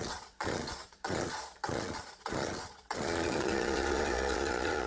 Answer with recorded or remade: remade